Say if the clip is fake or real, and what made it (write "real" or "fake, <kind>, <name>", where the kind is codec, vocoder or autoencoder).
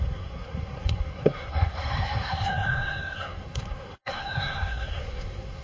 fake, codec, SNAC